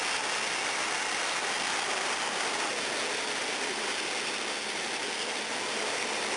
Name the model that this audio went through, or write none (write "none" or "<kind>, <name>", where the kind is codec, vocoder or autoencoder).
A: none